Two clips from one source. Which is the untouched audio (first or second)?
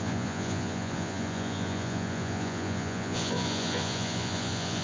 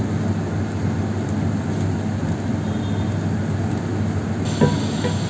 second